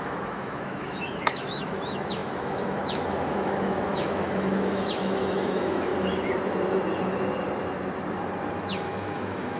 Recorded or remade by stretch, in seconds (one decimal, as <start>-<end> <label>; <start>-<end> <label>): 0.0-5.9 remade; 5.9-8.5 recorded; 8.5-9.6 remade